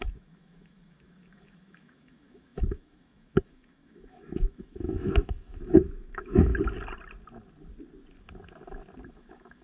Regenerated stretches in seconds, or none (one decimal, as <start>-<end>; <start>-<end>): 0.0-6.5; 9.1-9.6